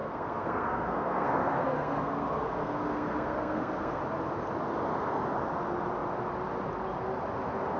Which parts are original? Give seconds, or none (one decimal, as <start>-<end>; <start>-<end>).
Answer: 4.0-7.8